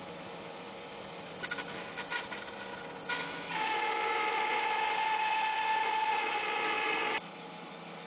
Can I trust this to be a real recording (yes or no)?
yes